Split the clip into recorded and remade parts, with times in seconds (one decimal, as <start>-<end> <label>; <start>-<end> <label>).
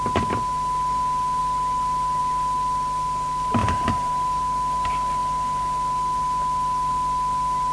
0.0-3.6 recorded; 3.6-4.4 remade; 4.4-7.7 recorded